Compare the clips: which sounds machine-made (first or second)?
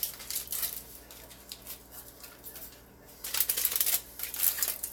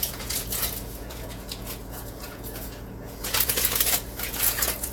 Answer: second